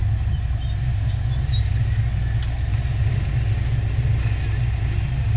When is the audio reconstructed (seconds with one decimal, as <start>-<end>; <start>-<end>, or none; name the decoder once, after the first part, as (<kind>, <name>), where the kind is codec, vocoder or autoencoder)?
0.0-1.7 (vocoder, BigVGAN v2); 2.2-5.4